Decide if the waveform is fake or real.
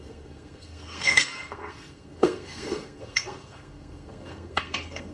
fake